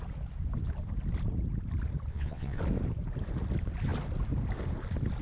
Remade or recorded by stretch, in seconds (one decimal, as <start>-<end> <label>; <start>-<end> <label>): 0.0-2.1 recorded; 2.1-2.6 remade; 2.6-5.2 recorded